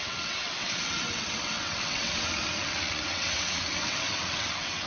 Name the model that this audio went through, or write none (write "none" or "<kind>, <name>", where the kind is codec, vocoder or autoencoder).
vocoder, WaveNeXt